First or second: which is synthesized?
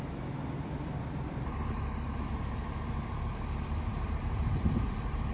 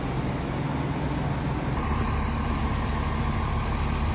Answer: first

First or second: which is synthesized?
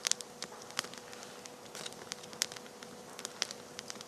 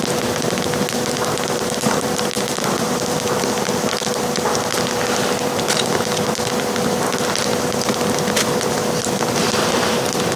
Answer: second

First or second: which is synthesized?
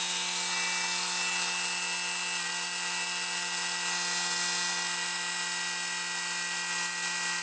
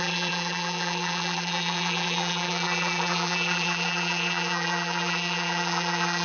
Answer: second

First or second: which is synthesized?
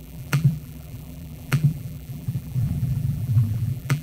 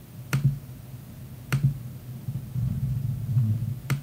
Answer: first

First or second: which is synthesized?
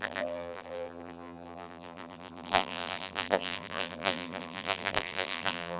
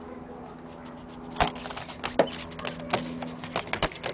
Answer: first